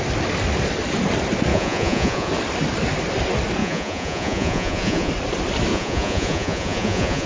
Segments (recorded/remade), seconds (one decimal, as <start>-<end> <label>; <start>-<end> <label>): 0.0-1.5 recorded; 1.5-2.3 remade; 2.3-3.6 recorded; 3.6-5.1 remade; 5.1-5.7 recorded; 5.7-7.3 remade